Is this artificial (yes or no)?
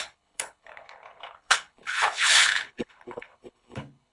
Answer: yes